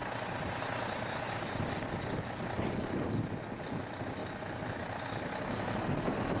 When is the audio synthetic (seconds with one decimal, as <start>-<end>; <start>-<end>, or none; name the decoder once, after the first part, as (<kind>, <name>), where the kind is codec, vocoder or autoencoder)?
none